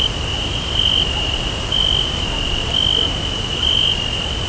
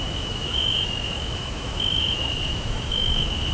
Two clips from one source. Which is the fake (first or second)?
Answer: second